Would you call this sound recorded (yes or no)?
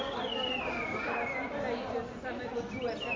yes